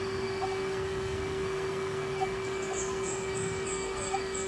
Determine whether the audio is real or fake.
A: fake